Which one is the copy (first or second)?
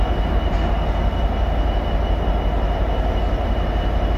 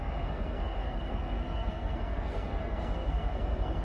second